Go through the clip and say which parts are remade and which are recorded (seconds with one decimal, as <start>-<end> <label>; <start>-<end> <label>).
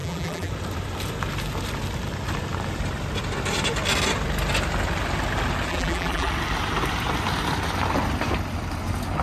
0.0-0.5 remade; 0.5-5.7 recorded; 5.7-6.3 remade; 6.3-9.2 recorded